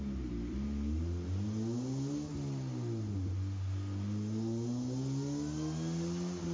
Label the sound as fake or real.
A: real